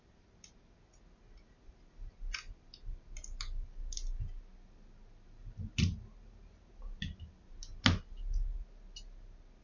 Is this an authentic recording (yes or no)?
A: yes